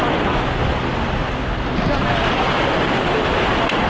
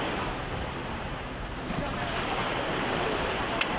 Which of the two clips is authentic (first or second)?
first